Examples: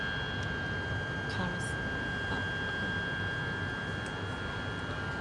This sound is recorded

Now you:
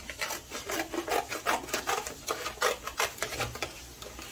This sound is recorded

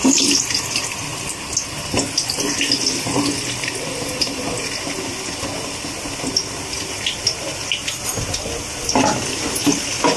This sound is recorded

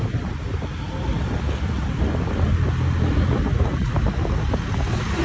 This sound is recorded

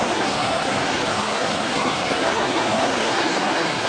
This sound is remade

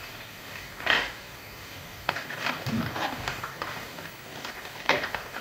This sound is remade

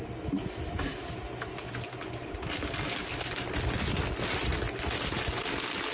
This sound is recorded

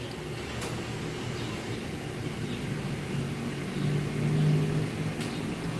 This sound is recorded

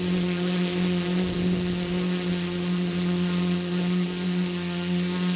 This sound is recorded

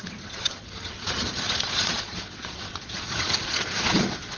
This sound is remade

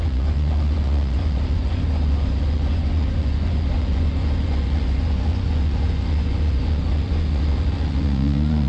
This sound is remade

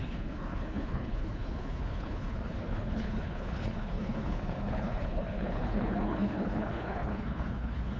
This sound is remade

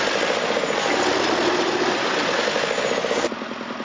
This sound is recorded